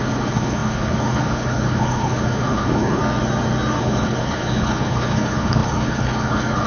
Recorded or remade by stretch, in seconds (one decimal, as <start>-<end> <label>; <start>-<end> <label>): 0.0-3.0 remade; 3.0-3.8 recorded; 3.8-6.7 remade